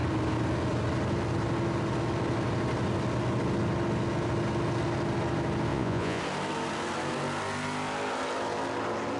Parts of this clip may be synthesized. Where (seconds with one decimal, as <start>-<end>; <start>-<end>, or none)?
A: 5.7-6.2